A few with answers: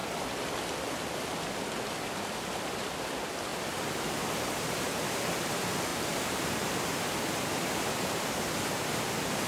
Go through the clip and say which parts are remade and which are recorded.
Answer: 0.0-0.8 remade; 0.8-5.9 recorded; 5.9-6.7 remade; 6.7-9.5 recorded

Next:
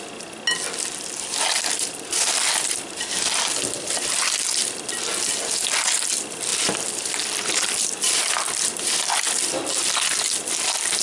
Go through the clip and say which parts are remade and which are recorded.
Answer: 0.0-11.0 recorded

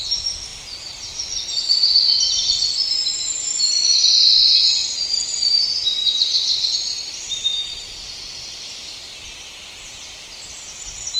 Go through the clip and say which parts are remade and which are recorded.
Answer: 0.0-5.4 recorded; 5.4-8.5 remade; 8.5-11.2 recorded

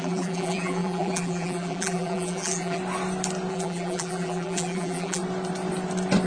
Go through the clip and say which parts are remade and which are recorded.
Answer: 0.0-2.8 remade; 2.8-3.5 recorded; 3.5-5.2 remade; 5.2-6.3 recorded

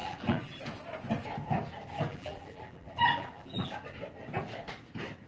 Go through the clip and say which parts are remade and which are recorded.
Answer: 0.0-0.6 remade; 0.6-2.1 recorded; 2.1-3.7 remade; 3.7-5.3 recorded

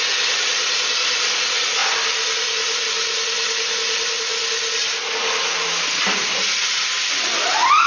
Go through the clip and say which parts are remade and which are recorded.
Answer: 0.0-7.9 recorded

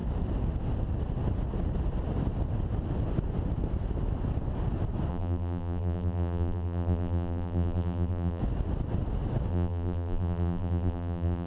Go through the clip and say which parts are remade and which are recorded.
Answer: 0.0-5.1 recorded; 5.1-8.4 remade; 8.4-9.5 recorded; 9.5-11.5 remade

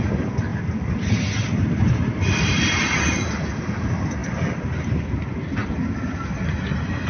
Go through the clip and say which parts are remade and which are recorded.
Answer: 0.0-0.5 recorded; 0.5-2.7 remade; 2.7-4.2 recorded; 4.2-4.9 remade; 4.9-5.6 recorded; 5.6-7.1 remade